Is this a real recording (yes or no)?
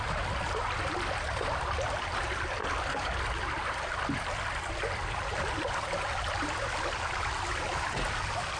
yes